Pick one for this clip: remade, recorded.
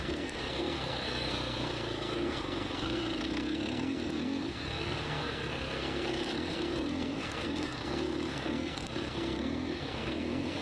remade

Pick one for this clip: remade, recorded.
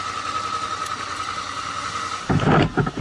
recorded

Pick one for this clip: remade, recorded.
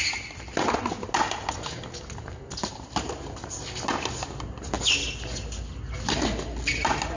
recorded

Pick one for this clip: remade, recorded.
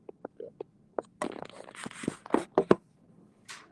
recorded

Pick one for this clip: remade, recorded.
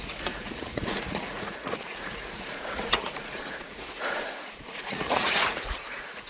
remade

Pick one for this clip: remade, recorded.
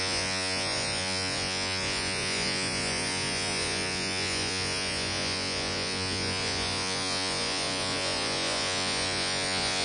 remade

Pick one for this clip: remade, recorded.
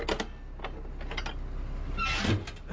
recorded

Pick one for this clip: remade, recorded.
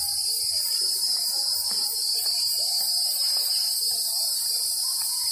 remade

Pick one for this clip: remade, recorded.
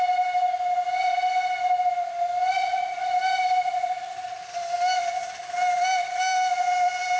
recorded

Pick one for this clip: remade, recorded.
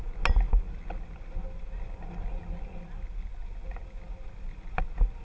recorded